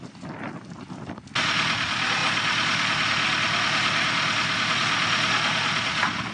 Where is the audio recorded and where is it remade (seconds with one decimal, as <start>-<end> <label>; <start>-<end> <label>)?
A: 0.0-6.3 recorded